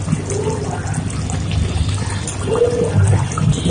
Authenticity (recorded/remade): recorded